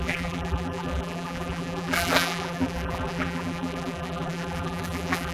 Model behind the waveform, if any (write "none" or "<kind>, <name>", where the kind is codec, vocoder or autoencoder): vocoder, BigVGAN v2